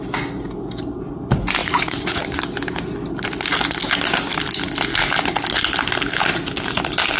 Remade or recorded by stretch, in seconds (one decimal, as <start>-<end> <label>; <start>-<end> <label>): 0.0-1.6 recorded; 1.6-2.4 remade; 2.4-7.2 recorded